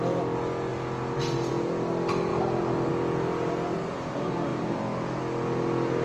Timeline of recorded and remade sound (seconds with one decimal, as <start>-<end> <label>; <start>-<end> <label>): 0.0-4.5 recorded; 4.5-5.2 remade; 5.2-6.0 recorded